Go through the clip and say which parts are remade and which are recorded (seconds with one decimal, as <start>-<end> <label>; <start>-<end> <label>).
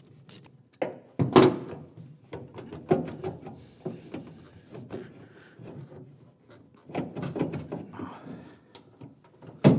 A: 0.0-4.5 recorded; 4.5-6.2 remade; 6.2-9.8 recorded